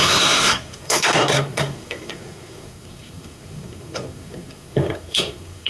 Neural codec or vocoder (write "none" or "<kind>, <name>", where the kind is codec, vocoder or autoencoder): codec, SNAC